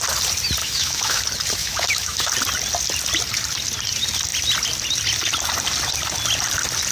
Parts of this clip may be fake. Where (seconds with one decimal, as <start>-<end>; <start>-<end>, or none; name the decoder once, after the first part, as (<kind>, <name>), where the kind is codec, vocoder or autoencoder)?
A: 0.6-1.2 (autoencoder, DAC-VAE); 1.6-2.3